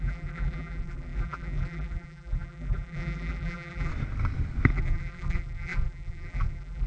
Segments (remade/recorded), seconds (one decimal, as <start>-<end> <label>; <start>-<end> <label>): 0.0-3.9 remade; 3.9-4.7 recorded; 4.7-6.9 remade